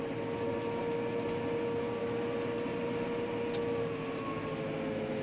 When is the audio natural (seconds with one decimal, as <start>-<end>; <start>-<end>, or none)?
0.0-5.2